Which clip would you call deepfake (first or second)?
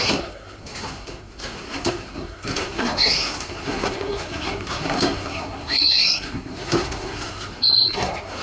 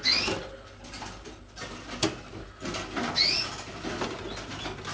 first